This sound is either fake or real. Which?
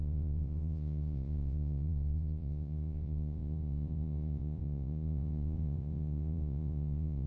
fake